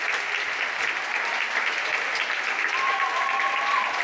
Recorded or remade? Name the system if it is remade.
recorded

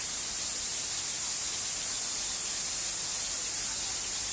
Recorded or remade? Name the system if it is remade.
recorded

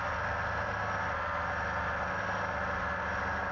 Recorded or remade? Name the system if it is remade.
recorded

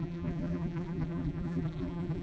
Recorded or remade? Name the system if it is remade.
remade, vocoder, BigVGAN v2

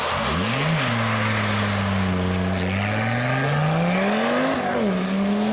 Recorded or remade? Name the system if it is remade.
recorded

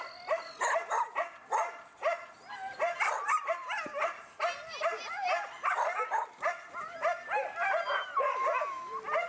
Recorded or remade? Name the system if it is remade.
recorded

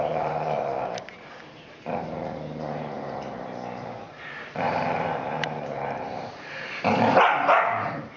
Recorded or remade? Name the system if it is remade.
remade, vocoder, BigVGAN v2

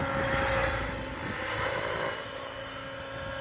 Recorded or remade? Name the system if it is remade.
recorded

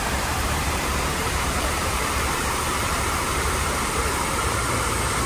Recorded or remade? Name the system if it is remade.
remade, vocoder, BigVGAN v2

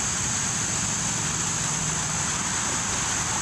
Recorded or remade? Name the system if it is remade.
recorded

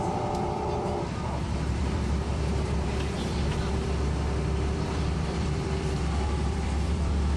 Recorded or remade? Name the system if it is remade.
remade, vocoder, BigVGAN v2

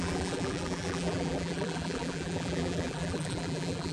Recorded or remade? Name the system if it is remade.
remade, vocoder, BigVGAN v2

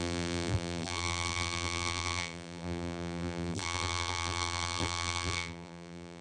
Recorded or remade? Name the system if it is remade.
remade, vocoder, BigVGAN v2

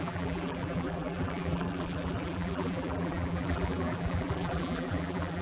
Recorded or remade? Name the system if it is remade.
remade, vocoder, BigVGAN v2